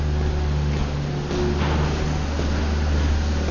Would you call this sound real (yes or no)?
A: yes